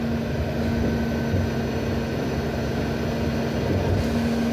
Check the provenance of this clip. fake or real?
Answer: real